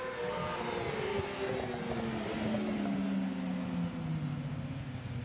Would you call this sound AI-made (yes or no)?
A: no